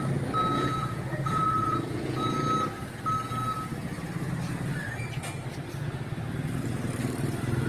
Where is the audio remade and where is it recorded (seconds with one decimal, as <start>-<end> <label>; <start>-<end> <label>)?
0.0-0.5 recorded; 0.5-2.2 remade; 2.2-7.7 recorded

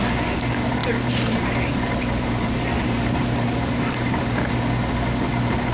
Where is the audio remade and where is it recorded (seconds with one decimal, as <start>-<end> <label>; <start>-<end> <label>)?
0.0-0.8 recorded; 0.8-4.2 remade; 4.2-5.7 recorded

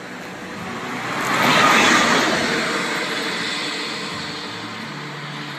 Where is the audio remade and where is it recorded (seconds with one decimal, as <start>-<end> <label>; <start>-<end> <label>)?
0.0-5.6 recorded

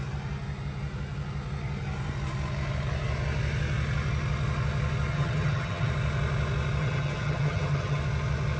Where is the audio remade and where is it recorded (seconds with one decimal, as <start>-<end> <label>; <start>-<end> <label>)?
0.0-5.1 recorded; 5.1-5.9 remade; 5.9-6.8 recorded; 6.8-8.0 remade; 8.0-8.6 recorded

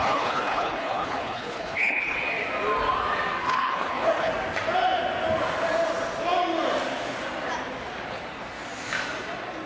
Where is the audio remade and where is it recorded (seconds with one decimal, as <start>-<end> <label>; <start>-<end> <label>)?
0.0-2.2 remade; 2.2-3.4 recorded; 3.4-4.3 remade; 4.3-9.7 recorded

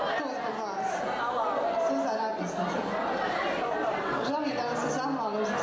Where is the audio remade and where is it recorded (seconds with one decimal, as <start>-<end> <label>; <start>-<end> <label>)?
0.0-5.6 recorded

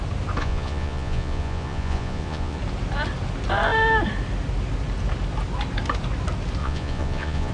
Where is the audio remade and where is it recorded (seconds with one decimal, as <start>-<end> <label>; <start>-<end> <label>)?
0.0-0.4 recorded; 0.4-2.6 remade; 2.6-6.6 recorded; 6.6-7.5 remade